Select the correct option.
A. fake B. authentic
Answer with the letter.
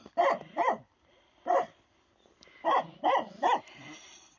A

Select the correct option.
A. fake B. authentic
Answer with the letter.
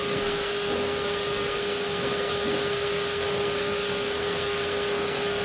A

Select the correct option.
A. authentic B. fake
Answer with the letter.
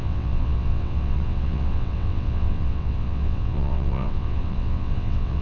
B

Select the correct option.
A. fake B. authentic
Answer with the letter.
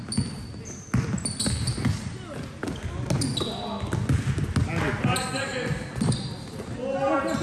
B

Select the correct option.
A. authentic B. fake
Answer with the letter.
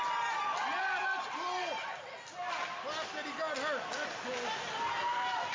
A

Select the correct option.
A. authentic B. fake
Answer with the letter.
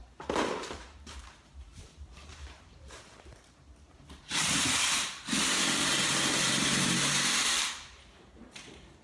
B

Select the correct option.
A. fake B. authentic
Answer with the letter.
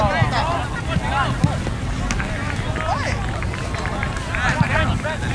B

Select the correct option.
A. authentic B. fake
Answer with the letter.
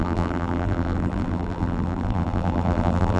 B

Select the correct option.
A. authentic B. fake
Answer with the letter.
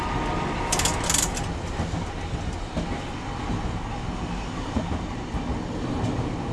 A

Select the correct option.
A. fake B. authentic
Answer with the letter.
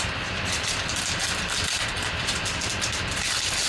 A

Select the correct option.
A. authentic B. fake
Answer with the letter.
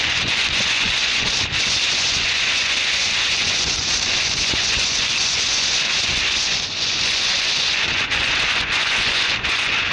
B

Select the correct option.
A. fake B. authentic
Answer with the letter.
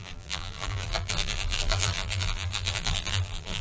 A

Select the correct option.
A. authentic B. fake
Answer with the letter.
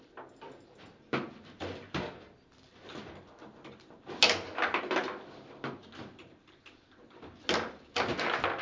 A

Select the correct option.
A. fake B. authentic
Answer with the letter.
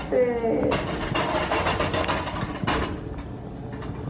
B